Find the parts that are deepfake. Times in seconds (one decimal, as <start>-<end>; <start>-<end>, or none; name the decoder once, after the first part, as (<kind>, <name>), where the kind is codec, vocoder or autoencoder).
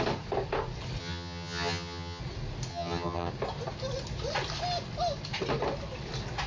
1.0-2.2 (vocoder, HiFi-GAN); 2.7-3.3